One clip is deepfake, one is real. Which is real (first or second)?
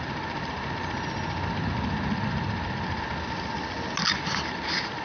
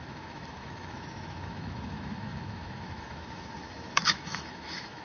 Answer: first